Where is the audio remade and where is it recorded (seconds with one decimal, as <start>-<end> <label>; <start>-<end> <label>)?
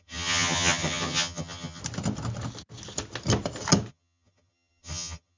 0.0-1.8 remade; 1.8-3.9 recorded; 3.9-5.4 remade